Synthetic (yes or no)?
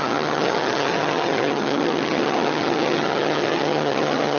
yes